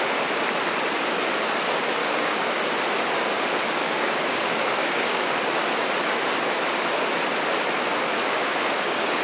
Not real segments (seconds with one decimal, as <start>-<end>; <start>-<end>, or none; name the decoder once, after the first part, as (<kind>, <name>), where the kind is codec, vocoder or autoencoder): 2.0-2.6 (codec, DAC); 3.8-5.3; 8.2-9.2